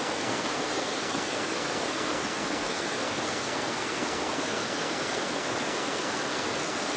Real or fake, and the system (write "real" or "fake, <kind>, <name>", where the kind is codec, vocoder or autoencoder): fake, codec, SNAC